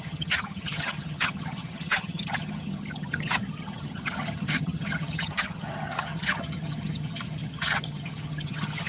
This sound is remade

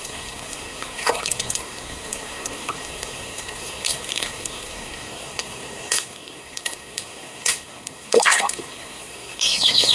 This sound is remade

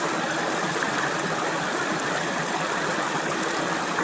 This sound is recorded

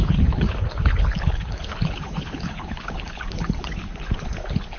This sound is remade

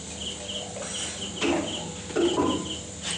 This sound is recorded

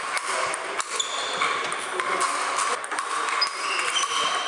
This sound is recorded